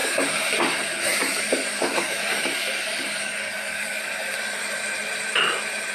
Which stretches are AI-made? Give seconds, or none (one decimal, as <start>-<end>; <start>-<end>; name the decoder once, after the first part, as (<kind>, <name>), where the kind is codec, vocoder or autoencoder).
0.0-0.6 (codec, DAC); 1.1-4.0